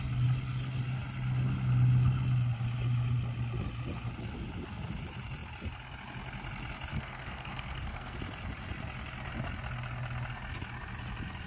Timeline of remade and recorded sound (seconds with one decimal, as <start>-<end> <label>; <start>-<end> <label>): 0.0-6.9 recorded; 6.9-8.2 remade; 8.2-11.5 recorded